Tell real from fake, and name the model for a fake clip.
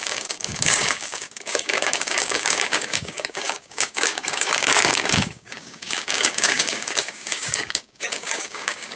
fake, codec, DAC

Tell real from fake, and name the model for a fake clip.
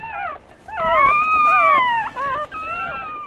real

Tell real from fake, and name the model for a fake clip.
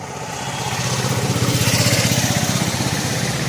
fake, vocoder, BigVGAN v2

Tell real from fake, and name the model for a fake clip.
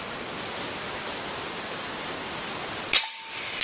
real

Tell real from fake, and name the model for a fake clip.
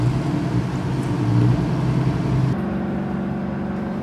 real